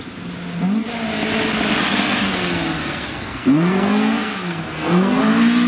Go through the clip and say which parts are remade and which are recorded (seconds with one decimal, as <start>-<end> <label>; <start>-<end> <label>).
0.0-1.9 recorded; 1.9-5.2 remade; 5.2-5.7 recorded